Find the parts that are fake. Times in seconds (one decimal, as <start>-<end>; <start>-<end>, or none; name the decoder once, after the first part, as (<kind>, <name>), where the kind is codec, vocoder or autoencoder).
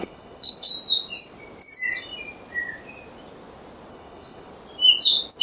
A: 0.0-0.7 (codec, HILCodec); 3.9-4.5